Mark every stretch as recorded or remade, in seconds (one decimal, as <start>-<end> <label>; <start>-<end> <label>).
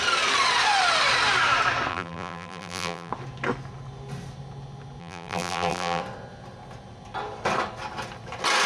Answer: 0.0-1.9 recorded; 1.9-3.1 remade; 3.1-5.0 recorded; 5.0-6.0 remade; 6.0-8.7 recorded